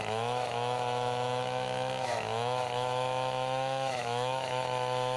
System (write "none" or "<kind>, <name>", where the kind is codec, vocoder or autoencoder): autoencoder, DAC-VAE